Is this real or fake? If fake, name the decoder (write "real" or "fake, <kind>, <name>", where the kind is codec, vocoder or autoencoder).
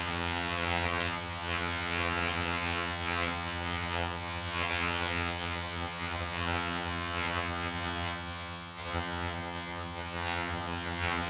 fake, vocoder, HiFi-GAN